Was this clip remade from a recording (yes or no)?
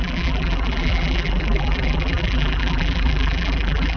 yes